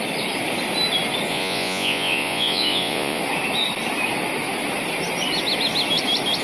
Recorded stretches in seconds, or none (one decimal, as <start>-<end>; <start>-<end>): 0.0-1.3; 3.2-6.4